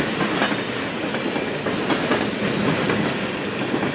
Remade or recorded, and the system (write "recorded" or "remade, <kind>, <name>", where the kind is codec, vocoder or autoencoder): recorded